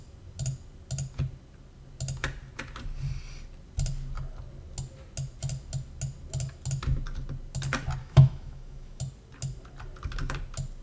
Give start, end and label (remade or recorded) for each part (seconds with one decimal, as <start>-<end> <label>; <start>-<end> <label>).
0.0-8.0 recorded; 8.0-9.0 remade; 9.0-10.8 recorded